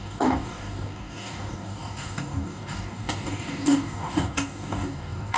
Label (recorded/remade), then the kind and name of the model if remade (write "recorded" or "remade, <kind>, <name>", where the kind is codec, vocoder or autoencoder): remade, codec, DAC